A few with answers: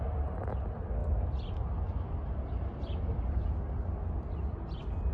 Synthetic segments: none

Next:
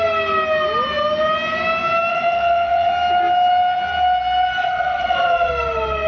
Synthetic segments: 2.1-2.9 (vocoder, WaveNeXt); 4.6-5.5

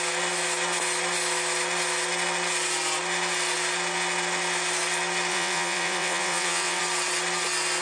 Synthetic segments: 5.3-6.8 (vocoder, WaveNeXt)

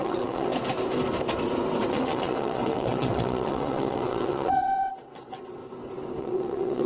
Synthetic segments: 0.0-0.5 (vocoder, WaveNeXt); 1.9-5.6; 6.2-6.9

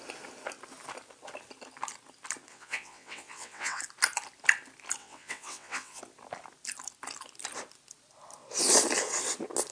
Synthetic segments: 2.5-3.8 (vocoder, WaveNeXt); 5.0-6.0

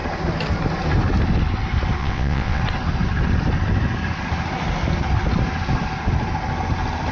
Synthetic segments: 2.0-2.6 (vocoder, WaveNeXt)